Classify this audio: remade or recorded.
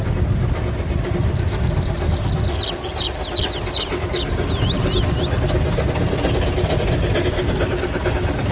recorded